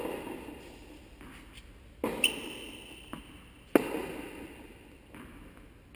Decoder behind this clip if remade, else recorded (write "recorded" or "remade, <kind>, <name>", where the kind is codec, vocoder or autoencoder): recorded